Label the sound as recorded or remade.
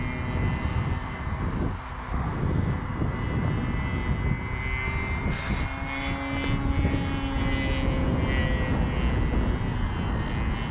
recorded